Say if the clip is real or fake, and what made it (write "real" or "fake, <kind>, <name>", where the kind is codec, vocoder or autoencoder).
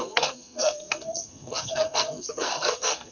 fake, codec, SNAC